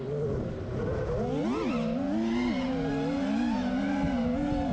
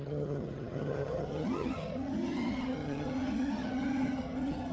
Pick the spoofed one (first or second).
second